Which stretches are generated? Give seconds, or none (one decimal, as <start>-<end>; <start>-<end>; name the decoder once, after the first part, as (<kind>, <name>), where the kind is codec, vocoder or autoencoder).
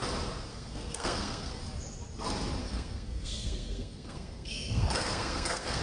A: 0.5-1.6 (codec, SNAC); 2.6-5.8